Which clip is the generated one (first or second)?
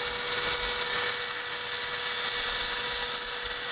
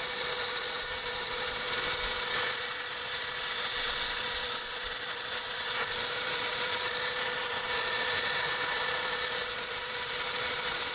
second